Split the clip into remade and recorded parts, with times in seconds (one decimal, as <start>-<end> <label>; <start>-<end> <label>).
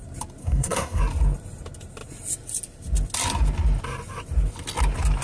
0.0-0.4 recorded; 0.4-1.0 remade; 1.0-5.2 recorded